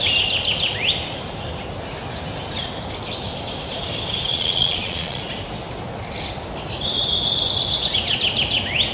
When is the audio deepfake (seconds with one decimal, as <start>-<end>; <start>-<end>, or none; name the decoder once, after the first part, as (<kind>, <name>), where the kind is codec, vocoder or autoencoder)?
4.3-5.2 (vocoder, Vocos)